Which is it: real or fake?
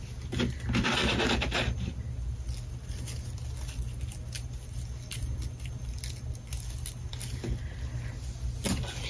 real